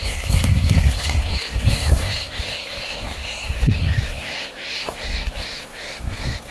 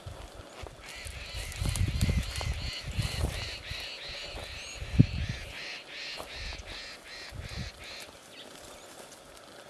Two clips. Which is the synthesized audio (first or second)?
first